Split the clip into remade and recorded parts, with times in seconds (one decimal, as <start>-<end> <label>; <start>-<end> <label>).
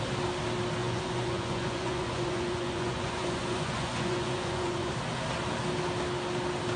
0.0-0.8 recorded; 0.8-4.9 remade; 4.9-6.8 recorded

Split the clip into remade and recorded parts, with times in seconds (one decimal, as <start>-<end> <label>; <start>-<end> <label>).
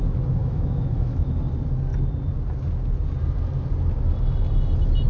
0.0-0.4 recorded; 0.4-1.4 remade; 1.4-5.1 recorded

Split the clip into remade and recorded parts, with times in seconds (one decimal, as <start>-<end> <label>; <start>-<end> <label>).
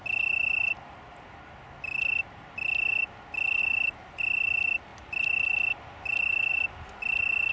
0.0-7.5 recorded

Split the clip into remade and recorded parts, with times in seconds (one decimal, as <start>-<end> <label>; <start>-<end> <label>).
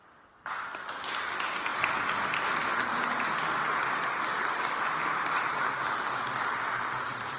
0.0-7.4 recorded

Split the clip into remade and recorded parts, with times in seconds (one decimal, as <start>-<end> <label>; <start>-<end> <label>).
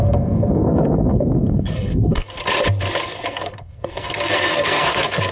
0.0-2.4 remade; 2.4-3.0 recorded; 3.0-5.3 remade